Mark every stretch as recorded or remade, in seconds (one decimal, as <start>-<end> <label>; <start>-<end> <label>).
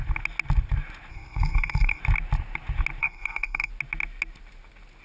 0.0-1.1 recorded; 1.1-2.0 remade; 2.0-3.0 recorded; 3.0-3.7 remade; 3.7-5.0 recorded